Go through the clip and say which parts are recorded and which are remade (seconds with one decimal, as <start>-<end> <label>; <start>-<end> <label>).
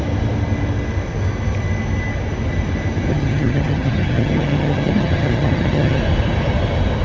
0.0-3.1 recorded; 3.1-6.0 remade; 6.0-7.0 recorded